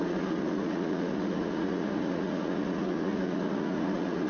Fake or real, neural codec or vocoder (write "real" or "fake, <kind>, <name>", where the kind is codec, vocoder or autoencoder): fake, vocoder, Vocos